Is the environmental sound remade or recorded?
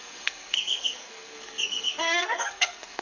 remade